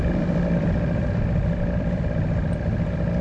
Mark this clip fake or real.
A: fake